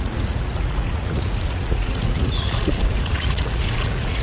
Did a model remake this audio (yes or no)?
yes